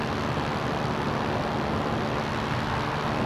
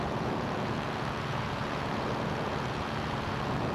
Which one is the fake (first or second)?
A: second